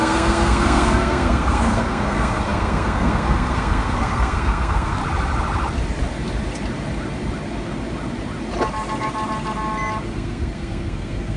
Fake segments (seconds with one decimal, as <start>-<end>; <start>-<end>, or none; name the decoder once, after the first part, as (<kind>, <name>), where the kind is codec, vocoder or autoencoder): 0.0-5.0 (codec, SNAC); 10.1-11.4